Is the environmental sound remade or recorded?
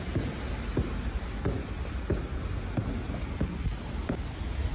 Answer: recorded